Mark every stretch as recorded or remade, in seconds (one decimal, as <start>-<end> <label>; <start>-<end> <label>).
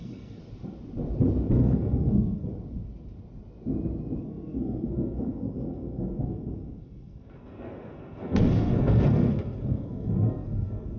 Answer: 0.0-0.4 remade; 0.4-1.5 recorded; 1.5-2.5 remade; 2.5-4.2 recorded; 4.2-11.0 remade